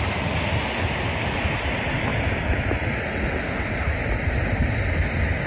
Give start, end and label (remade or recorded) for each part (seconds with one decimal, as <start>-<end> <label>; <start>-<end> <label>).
0.0-5.5 recorded